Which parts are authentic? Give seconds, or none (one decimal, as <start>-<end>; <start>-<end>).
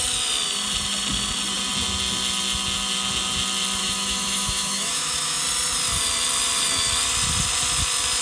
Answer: 0.0-3.8; 5.4-8.2